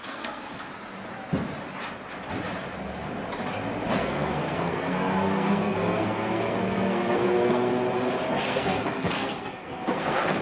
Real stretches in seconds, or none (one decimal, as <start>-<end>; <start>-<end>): 0.7-3.9; 7.7-8.4